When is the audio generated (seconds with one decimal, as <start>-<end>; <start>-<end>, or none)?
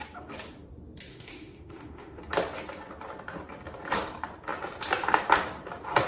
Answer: 1.1-2.2